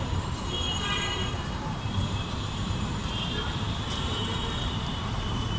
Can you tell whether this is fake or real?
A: fake